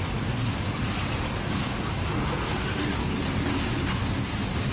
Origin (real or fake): real